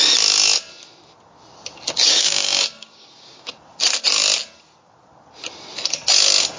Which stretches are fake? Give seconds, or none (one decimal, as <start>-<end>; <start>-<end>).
2.0-3.5